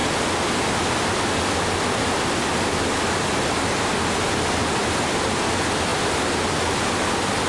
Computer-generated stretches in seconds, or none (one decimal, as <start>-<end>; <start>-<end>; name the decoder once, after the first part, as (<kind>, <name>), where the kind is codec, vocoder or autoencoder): none